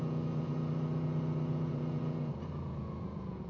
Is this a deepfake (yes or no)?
yes